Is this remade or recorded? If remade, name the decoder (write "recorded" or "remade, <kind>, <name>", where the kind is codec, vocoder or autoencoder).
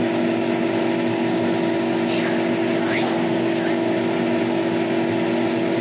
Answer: recorded